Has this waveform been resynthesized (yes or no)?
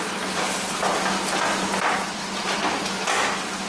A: no